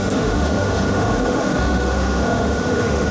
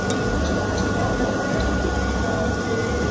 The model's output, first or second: first